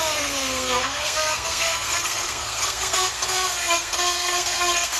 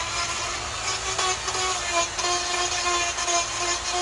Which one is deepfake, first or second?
first